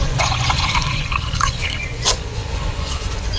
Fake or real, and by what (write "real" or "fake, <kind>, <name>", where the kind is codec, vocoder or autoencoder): fake, vocoder, Vocos